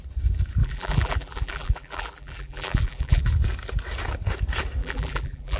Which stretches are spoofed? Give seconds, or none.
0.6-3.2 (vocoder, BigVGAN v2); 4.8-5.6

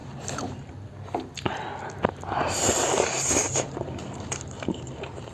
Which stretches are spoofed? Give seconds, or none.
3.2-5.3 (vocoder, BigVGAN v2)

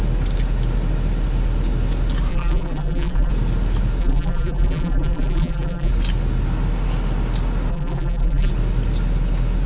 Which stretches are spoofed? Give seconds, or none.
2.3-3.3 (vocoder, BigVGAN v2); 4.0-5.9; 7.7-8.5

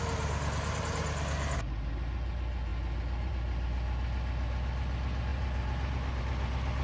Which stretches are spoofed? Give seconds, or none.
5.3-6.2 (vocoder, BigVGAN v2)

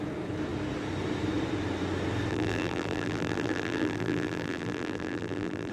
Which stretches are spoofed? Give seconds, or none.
2.3-5.7 (vocoder, BigVGAN v2)

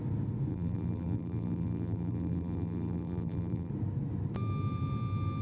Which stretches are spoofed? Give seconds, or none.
0.5-3.7 (vocoder, BigVGAN v2)

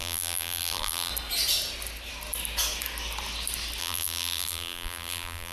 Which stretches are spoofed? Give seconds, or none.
0.0-1.1 (vocoder, BigVGAN v2); 3.8-5.5